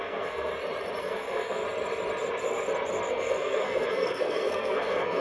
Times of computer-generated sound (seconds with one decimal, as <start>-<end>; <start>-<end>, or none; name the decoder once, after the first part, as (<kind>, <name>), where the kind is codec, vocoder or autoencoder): 0.0-0.5 (codec, SNAC); 1.0-1.6; 3.1-5.2